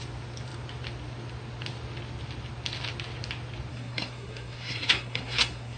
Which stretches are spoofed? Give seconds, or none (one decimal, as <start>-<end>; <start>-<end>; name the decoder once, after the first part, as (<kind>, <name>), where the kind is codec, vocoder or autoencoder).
3.7-5.8 (codec, SNAC)